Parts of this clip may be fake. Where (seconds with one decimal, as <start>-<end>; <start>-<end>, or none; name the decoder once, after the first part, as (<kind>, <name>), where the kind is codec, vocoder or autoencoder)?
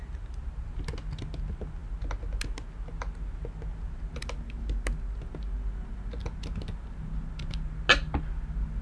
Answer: none